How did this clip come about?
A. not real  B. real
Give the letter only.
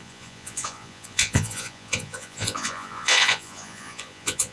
A